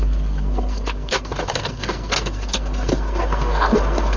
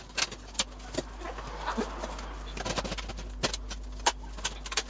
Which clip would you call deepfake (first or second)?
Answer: first